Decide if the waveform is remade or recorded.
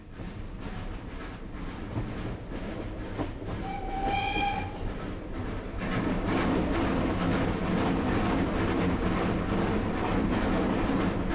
recorded